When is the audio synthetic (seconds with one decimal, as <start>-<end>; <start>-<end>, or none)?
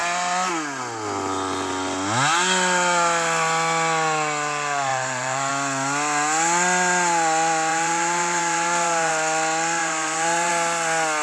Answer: 4.9-5.5; 7.7-9.1; 9.8-10.5